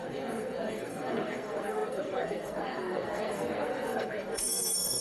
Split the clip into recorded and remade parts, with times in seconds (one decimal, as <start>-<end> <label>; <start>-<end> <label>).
0.0-5.0 remade